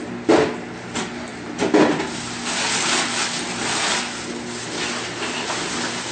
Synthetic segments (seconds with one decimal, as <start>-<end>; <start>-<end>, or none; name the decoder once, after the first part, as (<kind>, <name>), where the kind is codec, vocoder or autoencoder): none